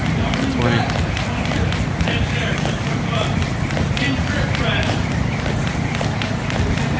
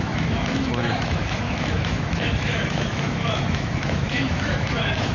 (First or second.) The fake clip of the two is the second